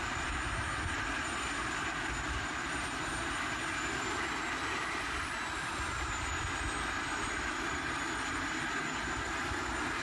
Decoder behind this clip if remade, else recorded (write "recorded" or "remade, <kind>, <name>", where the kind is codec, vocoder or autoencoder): recorded